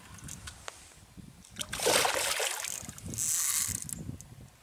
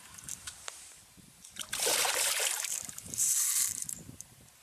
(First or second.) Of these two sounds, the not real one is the second